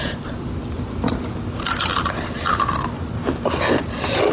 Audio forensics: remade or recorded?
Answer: recorded